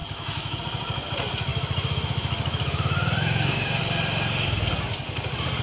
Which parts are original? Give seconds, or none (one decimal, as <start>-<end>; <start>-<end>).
0.6-1.5; 3.8-5.6